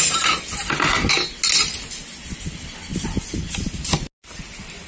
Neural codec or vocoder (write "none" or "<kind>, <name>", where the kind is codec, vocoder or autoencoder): none